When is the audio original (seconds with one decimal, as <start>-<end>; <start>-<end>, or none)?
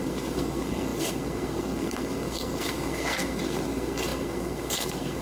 none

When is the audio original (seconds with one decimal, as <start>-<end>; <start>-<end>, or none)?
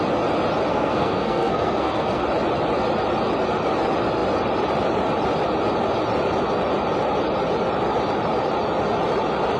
0.0-0.7; 2.2-9.6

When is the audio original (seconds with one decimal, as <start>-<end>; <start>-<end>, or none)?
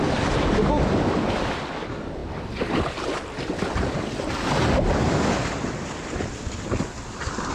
0.0-7.5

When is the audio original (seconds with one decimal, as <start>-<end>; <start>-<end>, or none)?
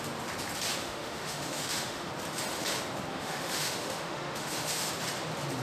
0.0-0.8; 2.1-3.1; 4.9-5.6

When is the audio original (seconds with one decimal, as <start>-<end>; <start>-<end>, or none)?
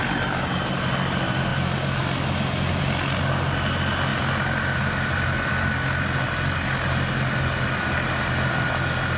0.0-9.2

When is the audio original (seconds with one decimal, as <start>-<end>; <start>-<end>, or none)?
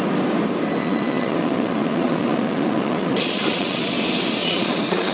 0.0-0.8; 3.9-4.4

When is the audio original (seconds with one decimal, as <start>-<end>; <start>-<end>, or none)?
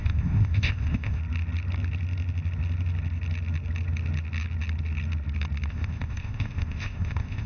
1.2-5.7